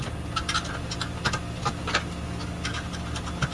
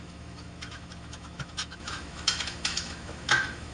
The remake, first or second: second